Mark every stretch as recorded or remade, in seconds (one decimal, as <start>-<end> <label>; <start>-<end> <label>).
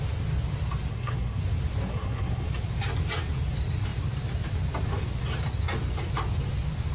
0.0-0.9 recorded; 0.9-1.4 remade; 1.4-1.9 recorded; 1.9-2.5 remade; 2.5-6.9 recorded